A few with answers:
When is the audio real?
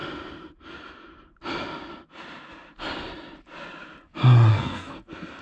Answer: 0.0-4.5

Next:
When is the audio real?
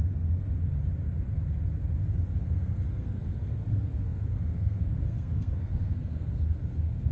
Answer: 0.5-2.4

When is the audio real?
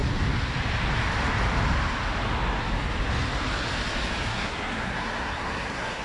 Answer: 0.0-4.3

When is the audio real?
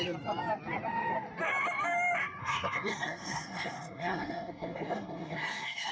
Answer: 0.0-2.4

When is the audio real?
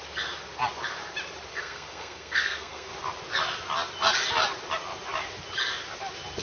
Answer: 0.0-1.5; 2.9-6.4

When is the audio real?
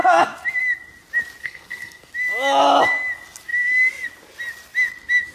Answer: 0.0-1.4; 2.1-5.3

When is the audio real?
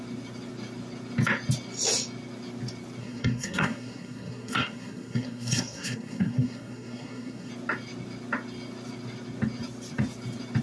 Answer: 0.0-3.0; 7.5-10.6